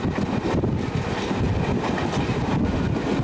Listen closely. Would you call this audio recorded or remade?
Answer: recorded